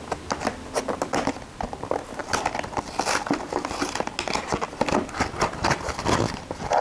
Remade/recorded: recorded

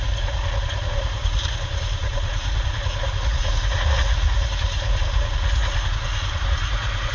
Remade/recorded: remade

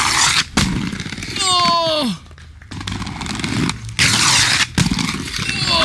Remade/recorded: recorded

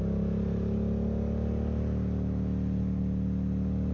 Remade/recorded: recorded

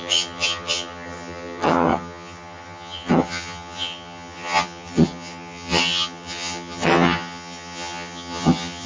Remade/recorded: remade